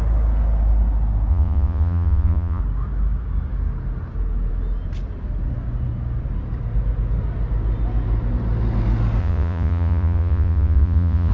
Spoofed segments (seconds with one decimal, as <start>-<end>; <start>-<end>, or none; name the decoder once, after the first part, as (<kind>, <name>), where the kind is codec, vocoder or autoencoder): 1.3-2.6 (vocoder, Vocos); 9.2-11.3